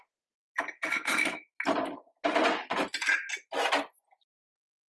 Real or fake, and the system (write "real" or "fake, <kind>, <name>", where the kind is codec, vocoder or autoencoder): real